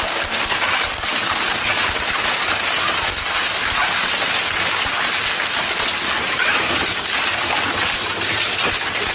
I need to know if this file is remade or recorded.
recorded